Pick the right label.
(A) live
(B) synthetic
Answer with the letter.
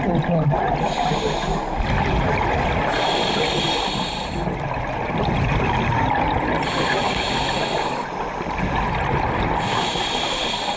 A